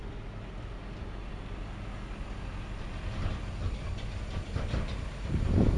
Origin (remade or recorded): recorded